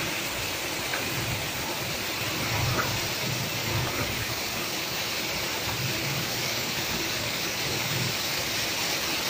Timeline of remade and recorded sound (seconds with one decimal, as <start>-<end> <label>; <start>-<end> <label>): 0.0-3.6 recorded; 3.6-5.2 remade; 5.2-6.0 recorded; 6.0-8.5 remade; 8.5-9.3 recorded